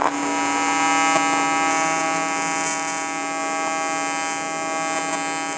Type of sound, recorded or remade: recorded